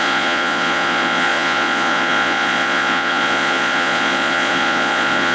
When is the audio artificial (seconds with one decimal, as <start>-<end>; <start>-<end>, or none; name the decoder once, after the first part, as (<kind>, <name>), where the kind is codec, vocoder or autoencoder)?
0.0-5.3 (vocoder, Vocos)